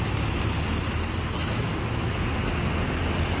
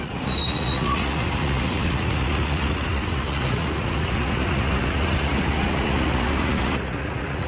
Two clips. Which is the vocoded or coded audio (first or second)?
second